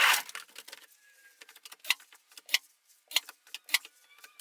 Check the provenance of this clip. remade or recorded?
recorded